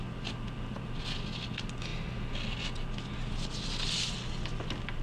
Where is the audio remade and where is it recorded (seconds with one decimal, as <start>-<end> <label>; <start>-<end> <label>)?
0.0-5.0 recorded